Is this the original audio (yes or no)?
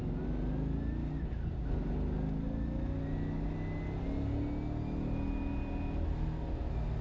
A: yes